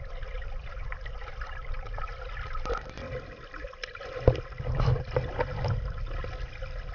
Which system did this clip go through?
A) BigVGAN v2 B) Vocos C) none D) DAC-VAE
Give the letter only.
C